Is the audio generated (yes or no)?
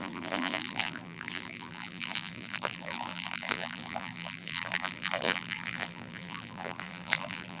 yes